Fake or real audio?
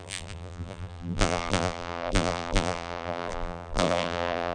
fake